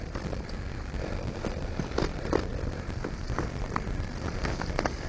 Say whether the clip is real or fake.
real